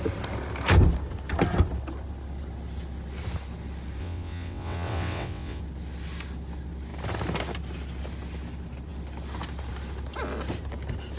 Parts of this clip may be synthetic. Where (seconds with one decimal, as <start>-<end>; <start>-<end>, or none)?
4.0-5.6